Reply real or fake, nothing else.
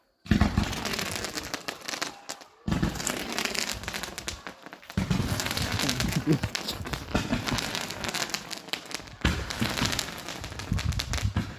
real